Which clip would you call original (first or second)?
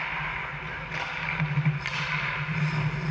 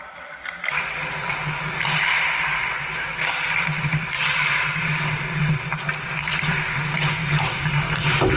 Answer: first